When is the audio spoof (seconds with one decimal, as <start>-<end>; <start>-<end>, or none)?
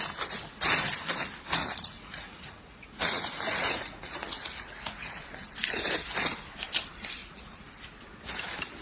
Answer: 1.6-5.2; 7.2-7.7